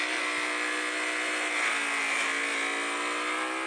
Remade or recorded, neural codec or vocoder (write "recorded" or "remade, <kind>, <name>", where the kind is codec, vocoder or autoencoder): recorded